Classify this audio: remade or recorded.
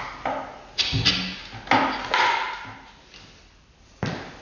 recorded